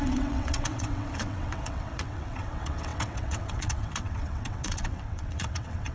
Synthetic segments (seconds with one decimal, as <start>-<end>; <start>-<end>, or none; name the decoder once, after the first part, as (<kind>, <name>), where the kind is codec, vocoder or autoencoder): 0.0-5.9 (vocoder, WaveNeXt)